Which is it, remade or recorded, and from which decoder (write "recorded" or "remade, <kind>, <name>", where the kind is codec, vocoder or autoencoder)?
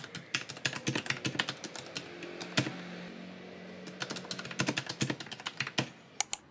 recorded